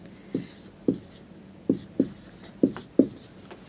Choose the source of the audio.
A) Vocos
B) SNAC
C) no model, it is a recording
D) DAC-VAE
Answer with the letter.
C